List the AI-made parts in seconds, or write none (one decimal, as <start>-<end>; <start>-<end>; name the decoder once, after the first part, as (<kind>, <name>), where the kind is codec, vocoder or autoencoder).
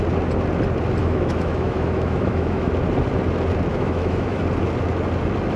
1.0-2.7 (autoencoder, DAC-VAE); 3.7-4.4